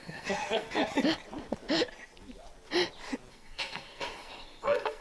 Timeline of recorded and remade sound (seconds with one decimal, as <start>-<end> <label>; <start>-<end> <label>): 0.0-0.8 remade; 0.8-3.3 recorded; 3.3-5.0 remade